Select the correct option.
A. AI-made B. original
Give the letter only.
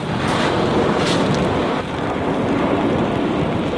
B